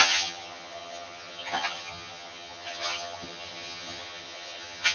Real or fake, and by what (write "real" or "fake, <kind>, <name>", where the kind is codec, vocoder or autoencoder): fake, vocoder, HiFi-GAN